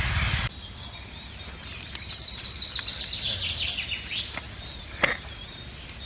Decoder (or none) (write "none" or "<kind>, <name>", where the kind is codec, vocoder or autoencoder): none